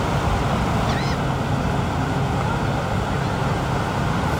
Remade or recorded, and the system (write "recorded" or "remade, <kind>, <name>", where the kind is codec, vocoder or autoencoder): recorded